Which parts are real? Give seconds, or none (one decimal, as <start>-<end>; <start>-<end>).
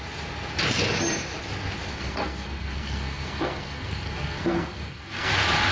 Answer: 0.0-1.9; 5.3-5.7